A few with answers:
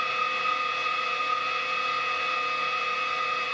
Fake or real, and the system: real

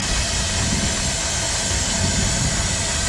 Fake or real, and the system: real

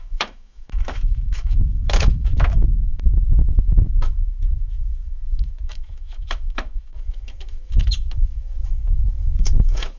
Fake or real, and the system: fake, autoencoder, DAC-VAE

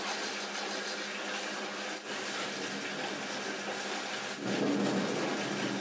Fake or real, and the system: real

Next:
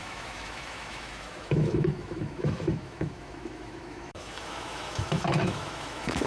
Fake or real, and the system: fake, autoencoder, DAC-VAE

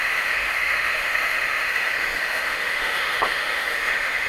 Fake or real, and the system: fake, autoencoder, DAC-VAE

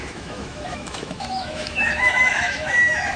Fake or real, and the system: fake, autoencoder, DAC-VAE